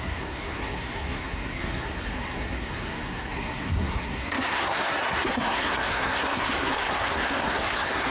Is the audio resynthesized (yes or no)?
yes